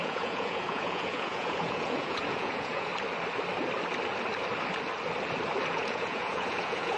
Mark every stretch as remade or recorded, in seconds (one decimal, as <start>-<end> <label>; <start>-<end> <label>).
0.0-2.9 remade; 2.9-5.7 recorded; 5.7-7.0 remade